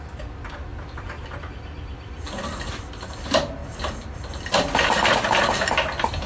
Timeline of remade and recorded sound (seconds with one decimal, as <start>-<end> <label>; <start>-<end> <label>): 0.0-0.7 recorded; 0.7-2.9 remade; 2.9-6.3 recorded